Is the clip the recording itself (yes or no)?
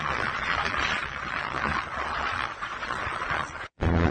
no